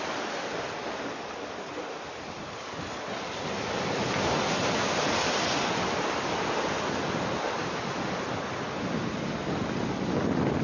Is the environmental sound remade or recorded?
recorded